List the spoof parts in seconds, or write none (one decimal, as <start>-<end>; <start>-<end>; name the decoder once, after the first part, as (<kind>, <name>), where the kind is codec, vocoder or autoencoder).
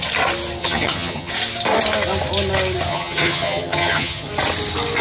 0.6-1.3 (vocoder, HiFi-GAN); 2.9-4.3